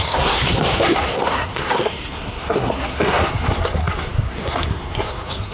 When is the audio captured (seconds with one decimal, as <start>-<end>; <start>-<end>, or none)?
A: none